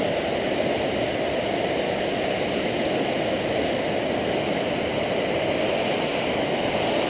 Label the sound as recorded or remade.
recorded